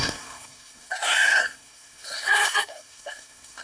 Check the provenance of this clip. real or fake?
fake